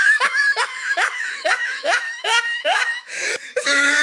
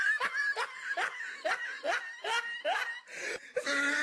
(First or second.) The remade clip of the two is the first